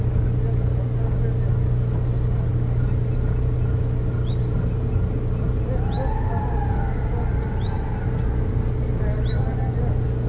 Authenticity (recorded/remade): recorded